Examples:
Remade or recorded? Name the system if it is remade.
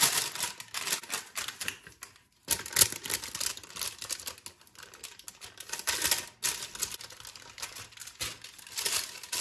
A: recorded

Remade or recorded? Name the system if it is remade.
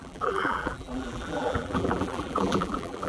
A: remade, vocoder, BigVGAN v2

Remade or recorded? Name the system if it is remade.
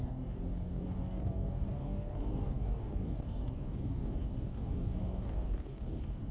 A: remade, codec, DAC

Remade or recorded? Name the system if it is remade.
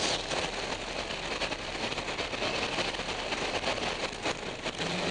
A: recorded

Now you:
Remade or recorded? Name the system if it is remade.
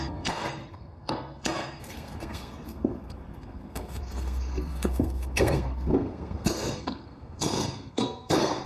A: remade, codec, SNAC